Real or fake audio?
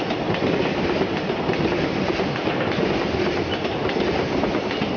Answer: real